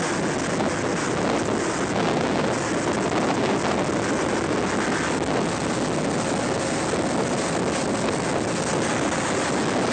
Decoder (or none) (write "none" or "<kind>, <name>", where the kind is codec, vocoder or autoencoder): none